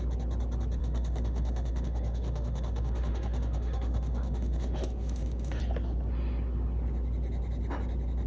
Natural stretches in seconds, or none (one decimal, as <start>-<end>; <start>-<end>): 0.0-0.8; 5.6-8.3